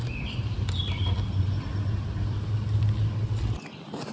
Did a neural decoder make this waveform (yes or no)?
yes